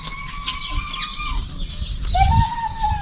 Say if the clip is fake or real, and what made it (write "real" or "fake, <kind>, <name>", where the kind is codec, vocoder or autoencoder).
real